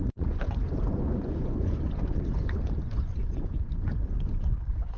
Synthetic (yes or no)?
yes